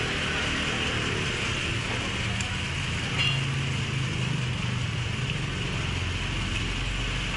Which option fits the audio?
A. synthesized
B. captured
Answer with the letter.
B